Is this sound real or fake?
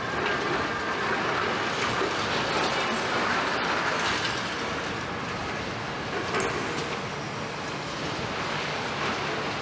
real